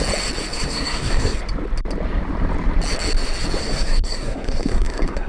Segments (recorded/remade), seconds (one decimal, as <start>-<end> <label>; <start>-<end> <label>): 0.0-0.5 recorded; 0.5-1.4 remade; 1.4-3.6 recorded; 3.6-5.3 remade